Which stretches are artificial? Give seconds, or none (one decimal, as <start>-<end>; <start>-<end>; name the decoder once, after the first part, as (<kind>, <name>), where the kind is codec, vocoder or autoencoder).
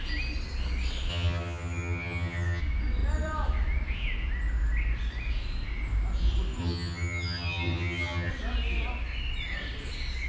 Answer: 1.1-2.6 (vocoder, HiFi-GAN); 6.6-8.3